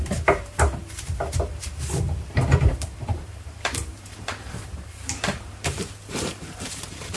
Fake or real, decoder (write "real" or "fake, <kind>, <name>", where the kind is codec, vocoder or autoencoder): fake, vocoder, BigVGAN v2